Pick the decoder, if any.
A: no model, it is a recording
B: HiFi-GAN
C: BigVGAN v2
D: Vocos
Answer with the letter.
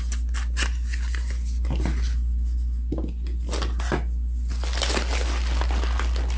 A